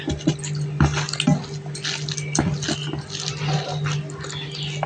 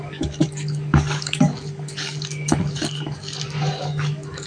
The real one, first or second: first